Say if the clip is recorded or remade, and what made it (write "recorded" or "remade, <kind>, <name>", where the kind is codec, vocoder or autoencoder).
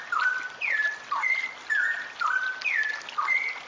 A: recorded